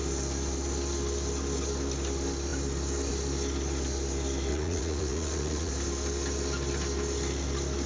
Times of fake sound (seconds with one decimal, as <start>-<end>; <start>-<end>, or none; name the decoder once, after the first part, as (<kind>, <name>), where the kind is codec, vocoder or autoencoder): 4.5-5.7 (vocoder, Vocos)